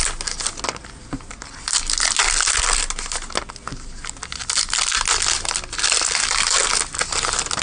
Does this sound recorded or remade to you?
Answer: recorded